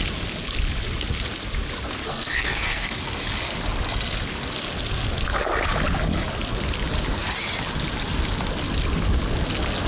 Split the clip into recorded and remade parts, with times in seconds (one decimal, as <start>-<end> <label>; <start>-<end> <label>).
0.0-2.0 recorded; 2.0-3.0 remade; 3.0-9.9 recorded